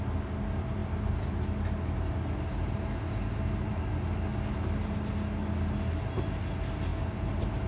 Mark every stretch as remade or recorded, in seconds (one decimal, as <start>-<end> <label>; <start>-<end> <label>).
0.0-7.7 recorded